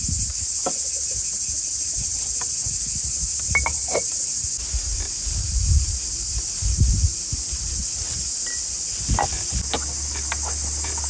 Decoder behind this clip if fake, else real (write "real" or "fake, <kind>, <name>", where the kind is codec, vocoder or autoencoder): real